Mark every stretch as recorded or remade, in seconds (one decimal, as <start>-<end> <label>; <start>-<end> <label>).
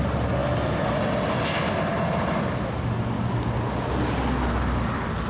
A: 0.0-5.3 recorded